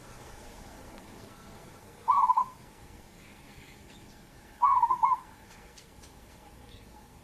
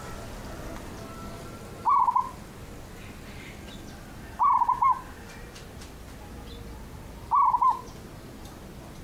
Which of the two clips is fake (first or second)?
first